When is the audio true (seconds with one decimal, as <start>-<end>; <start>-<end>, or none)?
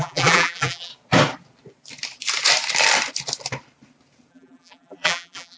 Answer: 0.9-4.3